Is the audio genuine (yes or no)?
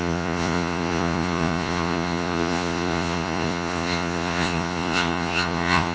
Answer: no